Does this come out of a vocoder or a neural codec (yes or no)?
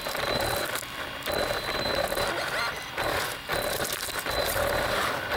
yes